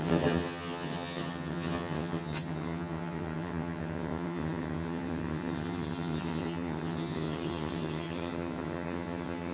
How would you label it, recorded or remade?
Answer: remade